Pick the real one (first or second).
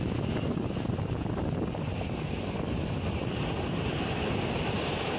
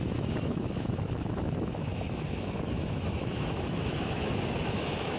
first